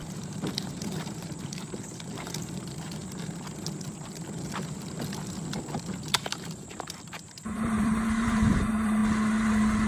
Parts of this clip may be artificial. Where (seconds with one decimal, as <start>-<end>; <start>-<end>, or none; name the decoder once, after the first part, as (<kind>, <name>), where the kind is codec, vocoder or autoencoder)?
0.0-3.0 (vocoder, BigVGAN v2); 6.1-9.0